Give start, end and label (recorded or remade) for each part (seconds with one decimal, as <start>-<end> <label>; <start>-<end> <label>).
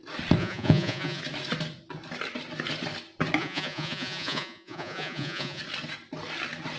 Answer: 0.0-0.4 recorded; 0.4-1.2 remade; 1.2-3.4 recorded; 3.4-5.6 remade; 5.6-6.8 recorded